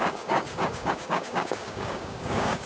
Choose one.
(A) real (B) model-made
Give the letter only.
B